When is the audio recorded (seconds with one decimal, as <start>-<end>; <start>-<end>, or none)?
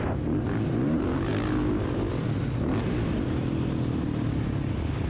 0.0-5.1